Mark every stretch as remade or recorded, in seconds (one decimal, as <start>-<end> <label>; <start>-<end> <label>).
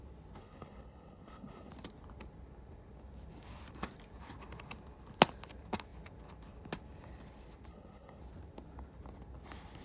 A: 0.0-0.4 recorded; 0.4-1.7 remade; 1.7-7.7 recorded; 7.7-8.2 remade; 8.2-9.8 recorded